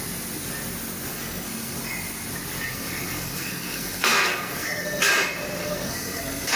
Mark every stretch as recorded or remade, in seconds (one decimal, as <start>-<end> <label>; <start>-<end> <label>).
0.0-1.1 recorded; 1.1-1.8 remade; 1.8-2.7 recorded; 2.7-5.1 remade; 5.1-5.6 recorded; 5.6-6.6 remade